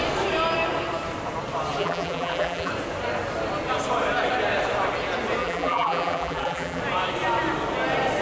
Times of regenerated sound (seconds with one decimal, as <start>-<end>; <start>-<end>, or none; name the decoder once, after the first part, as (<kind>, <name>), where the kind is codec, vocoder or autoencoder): 1.8-2.7 (vocoder, BigVGAN v2); 5.4-6.8